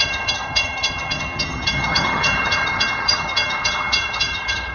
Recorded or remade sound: remade